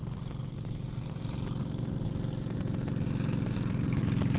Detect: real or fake real